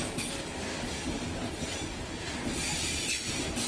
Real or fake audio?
real